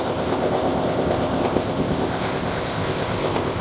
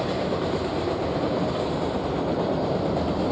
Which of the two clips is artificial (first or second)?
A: first